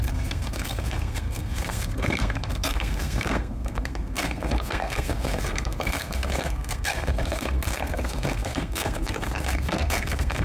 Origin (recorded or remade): remade